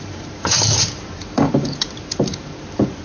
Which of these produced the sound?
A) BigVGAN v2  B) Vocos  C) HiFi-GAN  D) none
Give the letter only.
A